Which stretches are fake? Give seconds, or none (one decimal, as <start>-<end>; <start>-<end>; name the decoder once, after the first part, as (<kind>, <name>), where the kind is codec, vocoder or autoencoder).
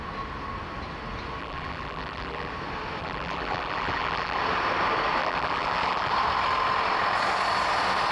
1.4-2.5 (vocoder, BigVGAN v2); 3.0-4.4; 5.2-6.1